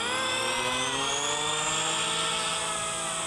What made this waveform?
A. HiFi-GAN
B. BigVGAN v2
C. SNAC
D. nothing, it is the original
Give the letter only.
D